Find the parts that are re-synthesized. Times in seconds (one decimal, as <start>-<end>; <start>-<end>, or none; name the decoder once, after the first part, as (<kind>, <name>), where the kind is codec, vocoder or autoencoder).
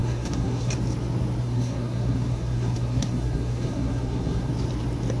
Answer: 0.0-0.7 (codec, SNAC); 1.4-4.5